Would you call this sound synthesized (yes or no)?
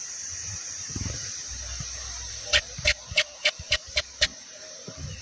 yes